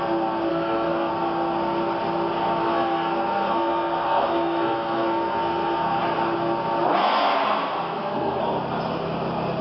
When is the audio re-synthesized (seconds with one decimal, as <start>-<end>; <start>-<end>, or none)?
0.5-1.1; 2.6-6.0; 7.0-8.4